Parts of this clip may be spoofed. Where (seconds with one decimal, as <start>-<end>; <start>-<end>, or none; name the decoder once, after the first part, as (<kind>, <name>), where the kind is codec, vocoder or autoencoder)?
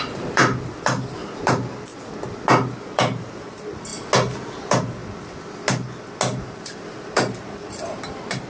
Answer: 0.0-0.4 (vocoder, BigVGAN v2); 1.1-1.9; 2.7-3.9; 4.5-5.0; 6.4-8.5